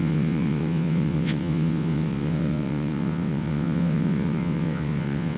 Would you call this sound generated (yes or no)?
yes